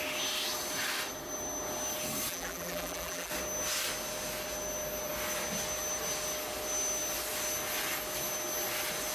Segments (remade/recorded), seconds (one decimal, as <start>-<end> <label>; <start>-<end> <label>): 0.0-2.3 recorded; 2.3-3.3 remade; 3.3-9.1 recorded